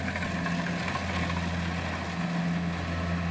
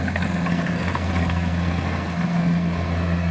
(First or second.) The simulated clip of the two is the second